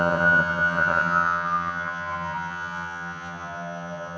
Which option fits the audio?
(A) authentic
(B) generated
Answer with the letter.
B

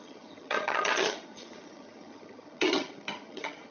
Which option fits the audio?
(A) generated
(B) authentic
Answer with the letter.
A